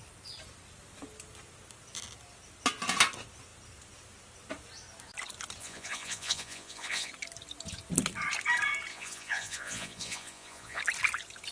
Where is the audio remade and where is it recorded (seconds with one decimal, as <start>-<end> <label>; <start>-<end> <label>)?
0.0-5.6 recorded; 5.6-7.1 remade; 7.1-8.9 recorded; 8.9-10.8 remade; 10.8-11.5 recorded